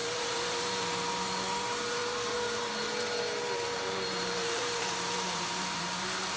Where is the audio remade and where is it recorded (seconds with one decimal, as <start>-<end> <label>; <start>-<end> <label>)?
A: 0.0-6.4 remade